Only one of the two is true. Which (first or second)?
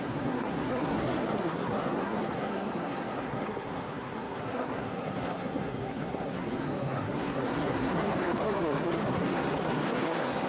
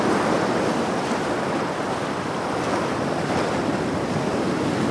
second